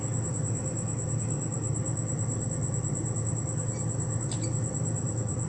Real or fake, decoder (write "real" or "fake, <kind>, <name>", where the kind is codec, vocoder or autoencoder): real